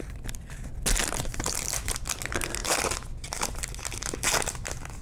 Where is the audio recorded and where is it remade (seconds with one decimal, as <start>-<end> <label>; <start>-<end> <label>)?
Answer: 0.0-1.0 recorded; 1.0-1.8 remade; 1.8-2.6 recorded; 2.6-3.4 remade; 3.4-5.0 recorded